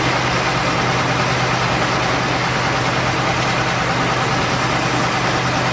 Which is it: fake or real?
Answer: real